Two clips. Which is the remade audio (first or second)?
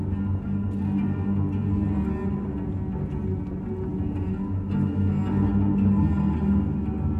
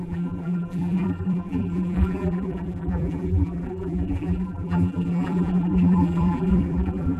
second